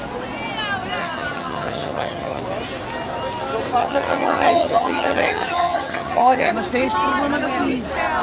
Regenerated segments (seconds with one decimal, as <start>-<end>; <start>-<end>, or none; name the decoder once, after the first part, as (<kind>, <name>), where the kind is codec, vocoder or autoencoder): 1.0-2.4 (vocoder, HiFi-GAN); 3.8-6.5